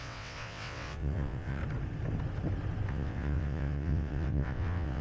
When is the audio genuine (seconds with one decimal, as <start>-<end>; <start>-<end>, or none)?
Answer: 1.6-2.9